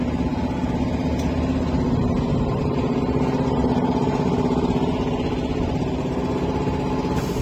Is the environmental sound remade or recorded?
recorded